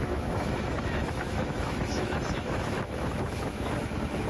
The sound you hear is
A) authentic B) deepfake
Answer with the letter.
B